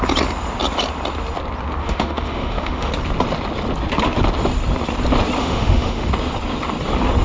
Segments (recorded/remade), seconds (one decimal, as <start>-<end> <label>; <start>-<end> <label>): 0.0-1.8 recorded; 1.8-2.9 remade; 2.9-5.4 recorded; 5.4-6.1 remade; 6.1-7.2 recorded